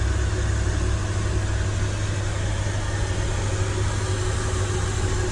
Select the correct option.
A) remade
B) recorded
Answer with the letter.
B